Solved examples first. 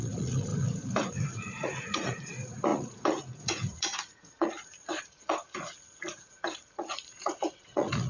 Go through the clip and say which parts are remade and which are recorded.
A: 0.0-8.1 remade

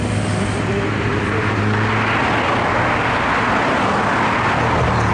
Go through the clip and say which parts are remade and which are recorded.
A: 0.0-5.1 recorded

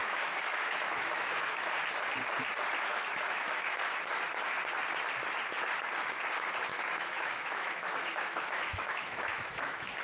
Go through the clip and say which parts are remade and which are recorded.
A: 0.0-1.8 remade; 1.8-2.9 recorded; 2.9-4.0 remade; 4.0-6.7 recorded; 6.7-10.0 remade

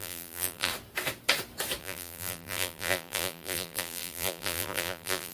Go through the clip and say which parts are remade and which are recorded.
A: 0.0-0.7 remade; 0.7-1.8 recorded; 1.8-5.3 remade

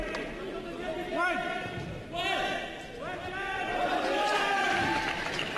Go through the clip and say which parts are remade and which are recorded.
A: 0.0-3.7 recorded; 3.7-5.6 remade

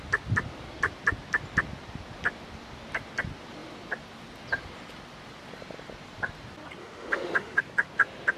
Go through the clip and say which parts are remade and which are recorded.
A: 0.0-6.8 recorded; 6.8-7.6 remade; 7.6-8.4 recorded

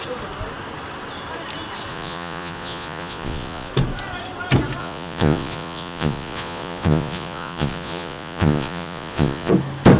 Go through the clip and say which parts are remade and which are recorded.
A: 0.0-1.9 recorded; 1.9-3.7 remade; 3.7-4.8 recorded; 4.8-9.5 remade; 9.5-10.0 recorded

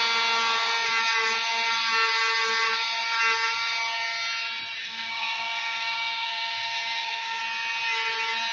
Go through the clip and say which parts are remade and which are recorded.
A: 0.0-4.8 recorded; 4.8-7.4 remade; 7.4-8.5 recorded